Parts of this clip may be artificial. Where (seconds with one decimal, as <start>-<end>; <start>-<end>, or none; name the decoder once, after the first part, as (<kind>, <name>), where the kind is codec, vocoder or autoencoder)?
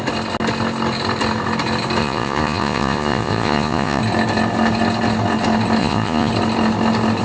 2.0-4.0 (vocoder, Vocos); 5.8-6.3